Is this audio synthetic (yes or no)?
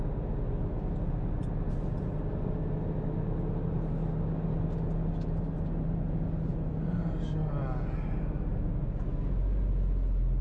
no